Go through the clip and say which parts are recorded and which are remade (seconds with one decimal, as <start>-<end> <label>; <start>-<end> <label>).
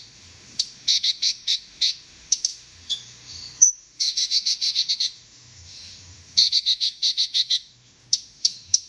0.0-8.9 remade